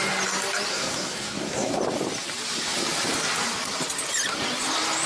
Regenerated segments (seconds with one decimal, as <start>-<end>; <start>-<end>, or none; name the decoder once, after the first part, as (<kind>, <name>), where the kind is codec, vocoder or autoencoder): 0.7-1.8 (codec, SNAC)